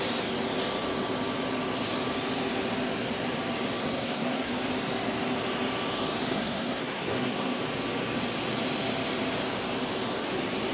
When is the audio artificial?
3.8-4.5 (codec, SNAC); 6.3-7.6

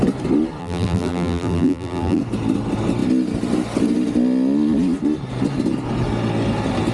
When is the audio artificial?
0.6-2.2 (vocoder, BigVGAN v2)

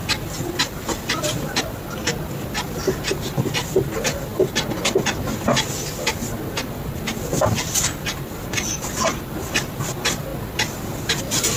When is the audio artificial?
1.2-4.3 (vocoder, BigVGAN v2); 9.0-11.6